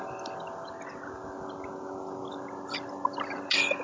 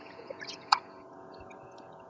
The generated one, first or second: second